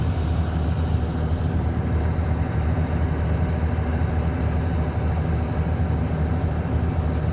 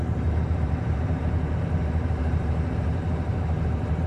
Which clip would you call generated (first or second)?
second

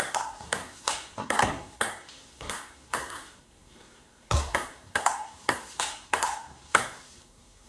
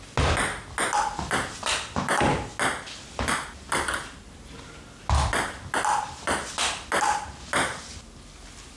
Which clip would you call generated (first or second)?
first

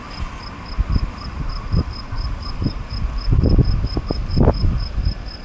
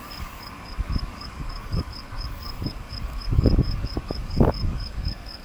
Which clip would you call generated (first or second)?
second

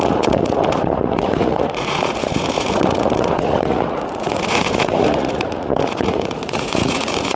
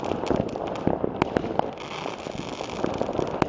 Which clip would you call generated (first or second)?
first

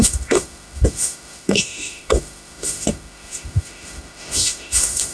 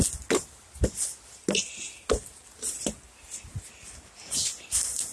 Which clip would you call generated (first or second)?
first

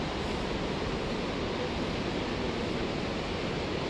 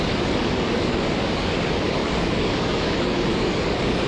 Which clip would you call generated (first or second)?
second